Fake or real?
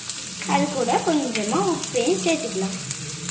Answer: real